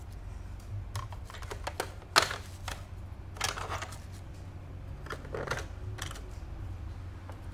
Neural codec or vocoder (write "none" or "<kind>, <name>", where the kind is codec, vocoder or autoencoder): none